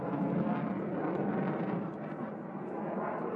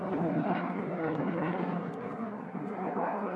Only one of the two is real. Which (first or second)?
first